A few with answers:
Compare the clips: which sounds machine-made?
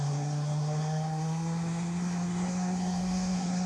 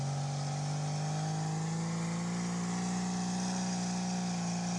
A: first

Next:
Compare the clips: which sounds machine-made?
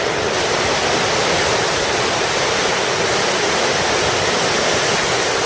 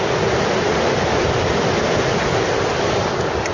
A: first